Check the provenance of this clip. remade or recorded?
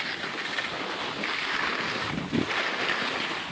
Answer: recorded